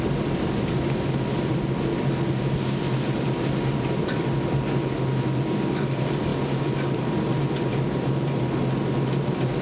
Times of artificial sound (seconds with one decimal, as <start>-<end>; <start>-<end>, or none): none